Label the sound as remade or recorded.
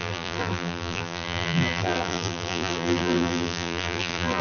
remade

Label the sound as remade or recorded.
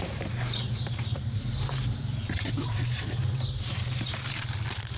remade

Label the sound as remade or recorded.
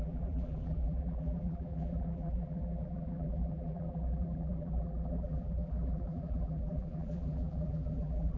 remade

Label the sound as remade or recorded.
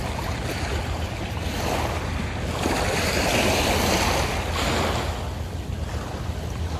recorded